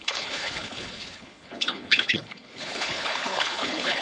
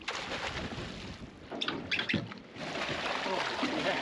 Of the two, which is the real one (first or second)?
second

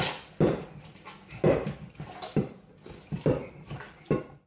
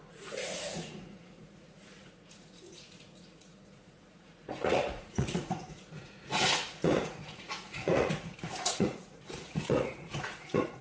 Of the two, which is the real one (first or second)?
first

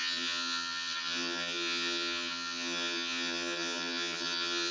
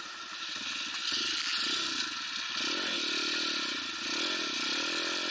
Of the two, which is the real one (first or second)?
second